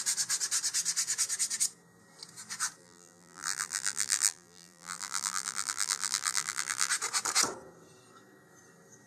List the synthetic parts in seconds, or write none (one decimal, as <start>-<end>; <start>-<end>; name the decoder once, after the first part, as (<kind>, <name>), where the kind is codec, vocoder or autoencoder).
2.8-6.9 (vocoder, BigVGAN v2)